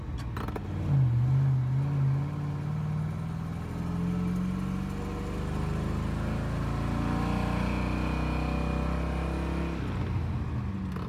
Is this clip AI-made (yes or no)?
no